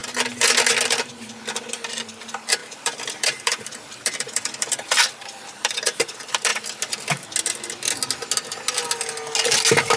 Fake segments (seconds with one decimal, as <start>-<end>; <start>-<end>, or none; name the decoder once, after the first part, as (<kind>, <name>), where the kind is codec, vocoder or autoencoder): 2.0-6.5 (vocoder, BigVGAN v2)